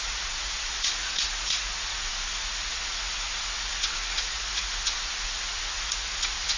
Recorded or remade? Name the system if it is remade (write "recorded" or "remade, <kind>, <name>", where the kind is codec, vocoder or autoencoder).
remade, vocoder, Vocos